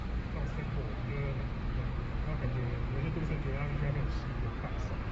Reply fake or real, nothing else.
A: real